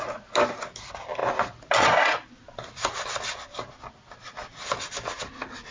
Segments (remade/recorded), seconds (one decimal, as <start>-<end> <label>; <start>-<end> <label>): 0.0-5.7 recorded